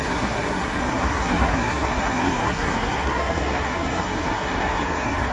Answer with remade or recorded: remade